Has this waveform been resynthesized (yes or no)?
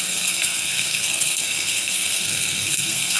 yes